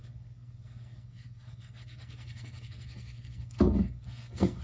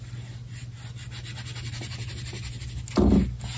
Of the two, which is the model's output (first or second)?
first